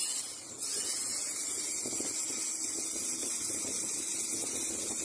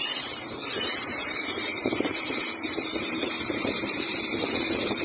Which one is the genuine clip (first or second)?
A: first